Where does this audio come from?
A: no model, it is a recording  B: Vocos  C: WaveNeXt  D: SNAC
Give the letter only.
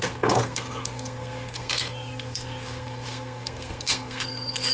D